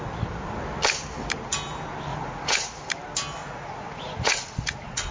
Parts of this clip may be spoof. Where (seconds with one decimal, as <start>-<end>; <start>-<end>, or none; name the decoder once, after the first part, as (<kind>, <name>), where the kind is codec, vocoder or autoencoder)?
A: 2.1-2.8 (vocoder, Vocos); 3.4-5.1